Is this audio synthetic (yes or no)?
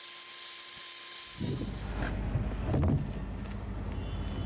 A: no